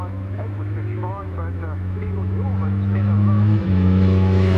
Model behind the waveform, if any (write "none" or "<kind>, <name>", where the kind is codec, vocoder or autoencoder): autoencoder, DAC-VAE